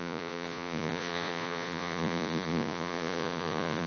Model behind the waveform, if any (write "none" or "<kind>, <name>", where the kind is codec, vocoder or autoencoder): vocoder, Vocos